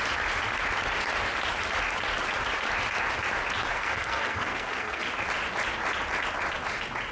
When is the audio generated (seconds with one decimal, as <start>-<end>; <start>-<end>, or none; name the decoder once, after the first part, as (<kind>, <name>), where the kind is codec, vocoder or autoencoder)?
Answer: 3.7-5.0 (codec, SNAC)